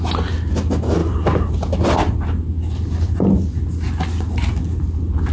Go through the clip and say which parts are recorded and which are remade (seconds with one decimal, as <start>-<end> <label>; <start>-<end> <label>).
0.0-5.3 recorded